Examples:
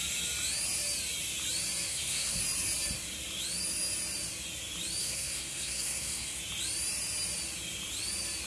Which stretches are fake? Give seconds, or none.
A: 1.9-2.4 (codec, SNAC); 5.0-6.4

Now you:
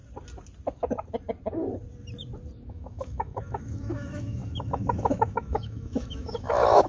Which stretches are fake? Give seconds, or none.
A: 2.7-6.9 (autoencoder, DAC-VAE)

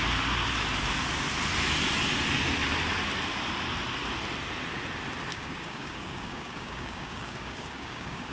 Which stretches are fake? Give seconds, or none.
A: 5.3-8.3 (codec, DAC)